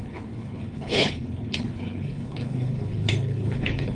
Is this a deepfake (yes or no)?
yes